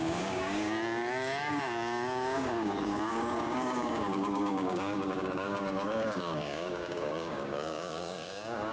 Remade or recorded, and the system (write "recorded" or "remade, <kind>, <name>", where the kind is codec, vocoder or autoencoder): remade, codec, DAC